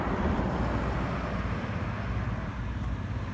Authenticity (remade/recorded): recorded